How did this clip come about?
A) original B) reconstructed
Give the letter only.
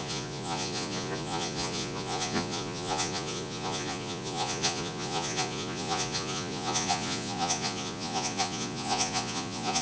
B